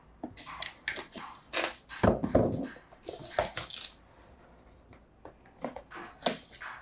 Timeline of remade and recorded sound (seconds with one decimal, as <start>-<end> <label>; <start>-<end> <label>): 0.0-1.0 recorded; 1.0-1.5 remade; 1.5-6.8 recorded